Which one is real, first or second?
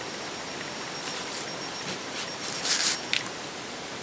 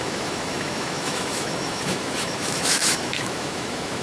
first